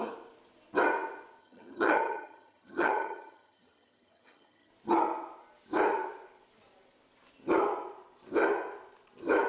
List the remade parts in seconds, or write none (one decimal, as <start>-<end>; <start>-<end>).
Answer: 1.4-4.7